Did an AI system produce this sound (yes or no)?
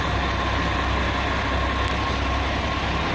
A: no